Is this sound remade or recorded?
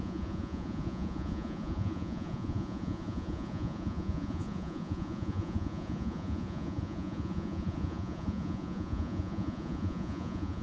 remade